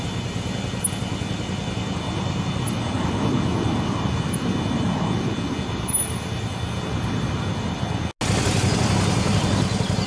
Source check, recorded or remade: recorded